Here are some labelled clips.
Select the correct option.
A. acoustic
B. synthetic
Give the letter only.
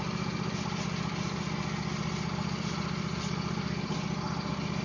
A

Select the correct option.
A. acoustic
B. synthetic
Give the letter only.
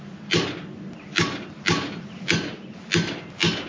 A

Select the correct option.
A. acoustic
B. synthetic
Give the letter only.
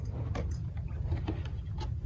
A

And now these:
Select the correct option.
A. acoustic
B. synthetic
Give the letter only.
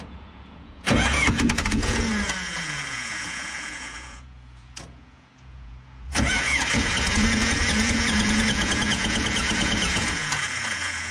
B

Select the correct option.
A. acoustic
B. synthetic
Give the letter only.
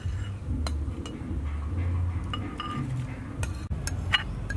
A